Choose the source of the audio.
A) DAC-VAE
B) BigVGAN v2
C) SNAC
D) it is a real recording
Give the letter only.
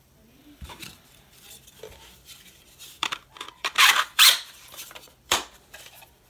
B